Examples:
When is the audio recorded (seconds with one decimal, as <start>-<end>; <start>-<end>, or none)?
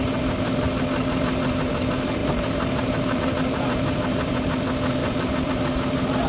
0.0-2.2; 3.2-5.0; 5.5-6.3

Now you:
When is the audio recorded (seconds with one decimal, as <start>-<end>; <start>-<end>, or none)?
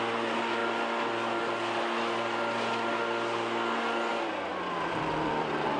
0.0-4.5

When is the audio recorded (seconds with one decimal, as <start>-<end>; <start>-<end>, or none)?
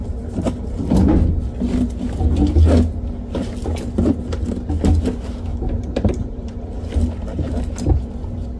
0.0-5.5; 6.5-8.6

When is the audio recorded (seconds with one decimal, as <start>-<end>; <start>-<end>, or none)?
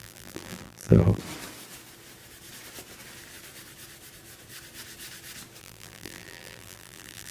1.2-5.6